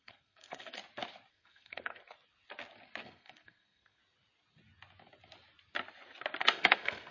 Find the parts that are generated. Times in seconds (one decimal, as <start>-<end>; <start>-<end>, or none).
0.0-0.8; 1.3-2.0; 3.0-4.0; 6.4-7.1